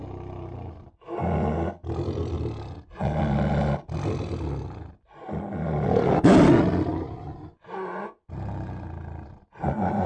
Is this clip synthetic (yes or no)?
no